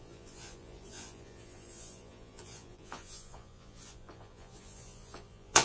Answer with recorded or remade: remade